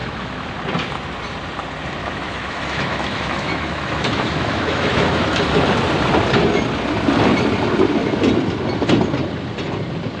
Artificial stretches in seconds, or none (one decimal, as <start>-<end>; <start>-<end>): 0.0-0.5; 2.0-5.4